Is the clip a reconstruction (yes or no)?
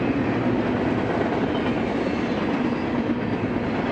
no